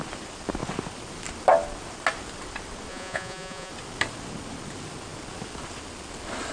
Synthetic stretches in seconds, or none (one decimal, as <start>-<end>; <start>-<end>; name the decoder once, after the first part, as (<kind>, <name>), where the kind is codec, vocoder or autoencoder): 2.9-3.7 (vocoder, Vocos)